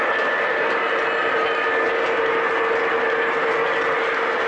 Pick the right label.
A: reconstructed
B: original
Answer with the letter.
B